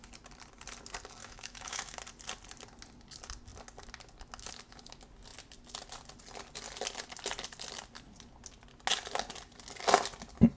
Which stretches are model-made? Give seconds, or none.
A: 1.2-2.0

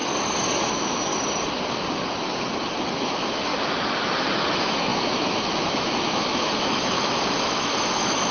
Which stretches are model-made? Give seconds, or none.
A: 0.7-1.1; 2.9-3.5; 4.5-8.3

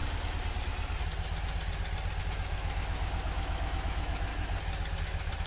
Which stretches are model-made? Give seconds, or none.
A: 2.2-4.3; 5.0-5.5

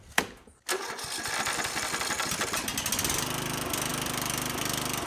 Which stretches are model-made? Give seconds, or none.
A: none

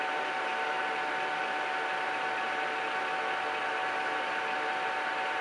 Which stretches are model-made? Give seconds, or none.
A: none

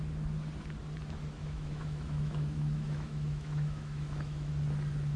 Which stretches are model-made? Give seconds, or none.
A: 1.4-4.5

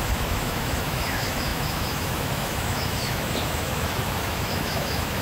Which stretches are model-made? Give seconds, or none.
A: 0.0-5.2